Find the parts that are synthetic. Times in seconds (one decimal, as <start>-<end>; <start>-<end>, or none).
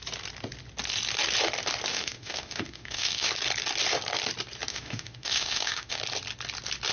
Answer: 1.9-3.3; 4.7-6.0